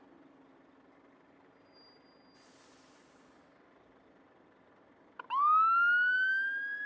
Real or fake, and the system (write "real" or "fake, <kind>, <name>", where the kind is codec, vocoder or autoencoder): real